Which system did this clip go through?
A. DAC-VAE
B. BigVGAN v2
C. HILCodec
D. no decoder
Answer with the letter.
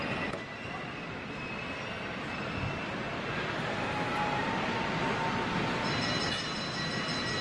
D